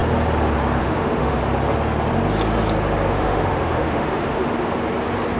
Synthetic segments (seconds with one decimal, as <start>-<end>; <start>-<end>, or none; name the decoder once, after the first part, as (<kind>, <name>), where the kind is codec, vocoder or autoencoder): 0.8-1.4 (autoencoder, DAC-VAE); 3.1-4.5